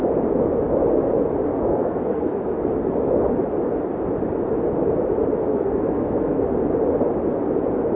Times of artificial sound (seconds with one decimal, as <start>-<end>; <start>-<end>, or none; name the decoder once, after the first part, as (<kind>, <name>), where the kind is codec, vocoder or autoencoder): 1.5-2.4 (codec, SNAC); 5.5-6.4